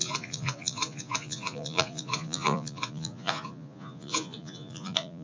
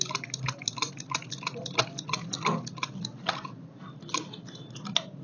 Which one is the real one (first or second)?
second